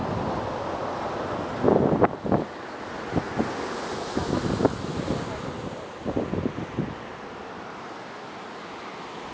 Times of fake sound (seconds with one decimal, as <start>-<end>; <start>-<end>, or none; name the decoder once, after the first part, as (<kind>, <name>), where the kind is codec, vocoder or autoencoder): none